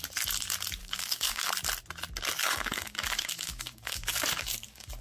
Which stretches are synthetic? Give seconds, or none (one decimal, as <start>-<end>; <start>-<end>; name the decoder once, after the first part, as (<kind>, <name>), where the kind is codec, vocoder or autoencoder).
0.8-1.4 (codec, DAC); 2.4-5.0